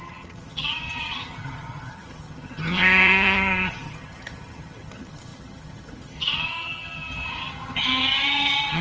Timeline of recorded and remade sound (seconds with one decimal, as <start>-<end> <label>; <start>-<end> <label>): 0.0-8.8 remade